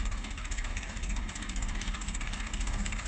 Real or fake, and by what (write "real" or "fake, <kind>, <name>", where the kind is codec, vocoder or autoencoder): fake, codec, DAC